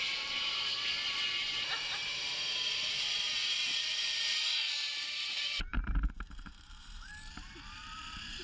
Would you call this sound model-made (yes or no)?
yes